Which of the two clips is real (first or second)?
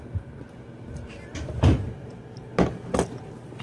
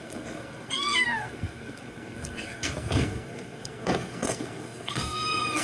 first